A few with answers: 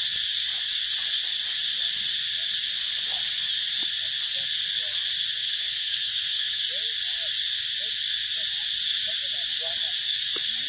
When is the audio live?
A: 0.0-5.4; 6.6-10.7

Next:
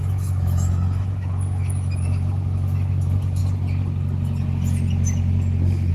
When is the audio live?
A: 3.4-5.9

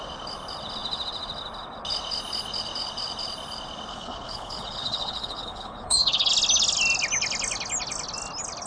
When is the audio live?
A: 0.0-3.9; 6.3-8.7

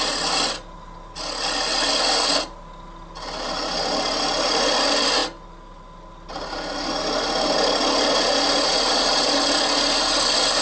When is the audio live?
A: 0.0-10.6

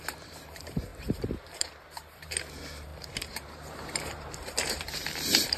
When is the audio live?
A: none

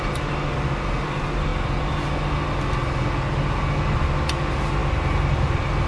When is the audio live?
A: 0.0-4.8; 5.5-5.9